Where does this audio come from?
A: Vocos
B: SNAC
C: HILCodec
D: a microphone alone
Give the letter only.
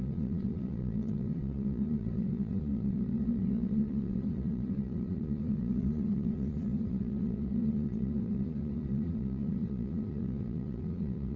A